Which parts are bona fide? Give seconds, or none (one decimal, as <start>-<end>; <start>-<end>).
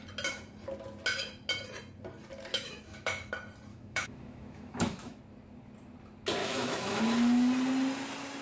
0.0-2.5; 3.3-3.7; 5.2-6.4; 7.0-8.4